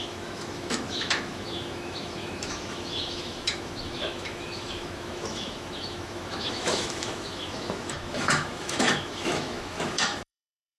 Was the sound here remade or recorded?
remade